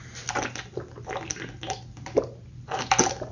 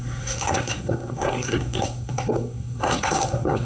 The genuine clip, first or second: first